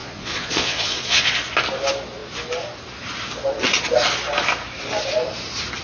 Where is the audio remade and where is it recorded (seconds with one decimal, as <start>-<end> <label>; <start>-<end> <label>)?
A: 0.0-1.3 remade; 1.3-5.8 recorded

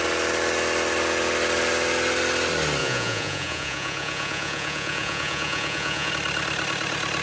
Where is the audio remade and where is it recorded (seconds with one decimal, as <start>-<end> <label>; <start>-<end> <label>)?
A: 0.0-2.8 recorded; 2.8-6.1 remade; 6.1-7.2 recorded

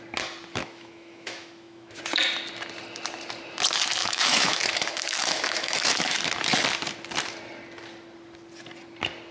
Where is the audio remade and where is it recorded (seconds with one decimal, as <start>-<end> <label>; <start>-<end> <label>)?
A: 0.0-0.6 recorded; 0.6-2.0 remade; 2.0-4.0 recorded; 4.0-6.2 remade; 6.2-9.3 recorded

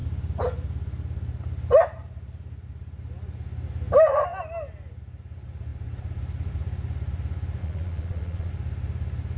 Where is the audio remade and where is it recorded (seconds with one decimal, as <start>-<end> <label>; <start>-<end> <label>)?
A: 0.0-7.6 recorded; 7.6-8.5 remade; 8.5-9.4 recorded

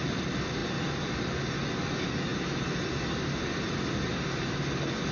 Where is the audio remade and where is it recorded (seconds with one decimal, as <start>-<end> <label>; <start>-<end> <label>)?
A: 0.0-5.1 recorded

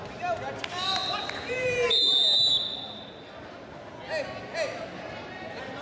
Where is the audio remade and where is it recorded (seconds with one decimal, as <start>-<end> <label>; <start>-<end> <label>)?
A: 0.0-5.8 recorded

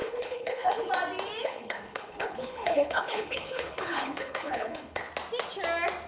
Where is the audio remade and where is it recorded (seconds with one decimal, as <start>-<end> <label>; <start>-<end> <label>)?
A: 0.0-0.9 remade; 0.9-1.4 recorded; 1.4-5.1 remade; 5.1-6.1 recorded

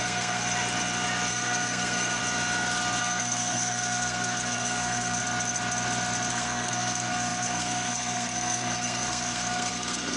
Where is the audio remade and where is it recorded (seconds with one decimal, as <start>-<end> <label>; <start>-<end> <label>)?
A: 0.0-0.4 remade; 0.4-1.3 recorded; 1.3-2.2 remade; 2.2-3.0 recorded; 3.0-5.2 remade; 5.2-6.3 recorded; 6.3-10.2 remade